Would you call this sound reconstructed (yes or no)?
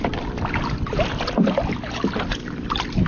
no